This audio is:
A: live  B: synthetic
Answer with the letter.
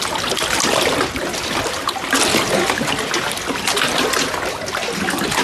A